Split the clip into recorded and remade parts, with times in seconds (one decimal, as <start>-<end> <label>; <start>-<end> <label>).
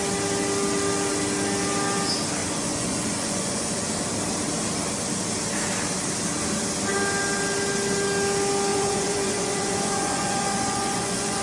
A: 0.0-2.4 recorded; 2.4-3.9 remade; 3.9-8.7 recorded; 8.7-11.4 remade